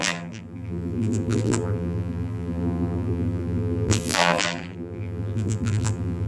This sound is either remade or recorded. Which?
remade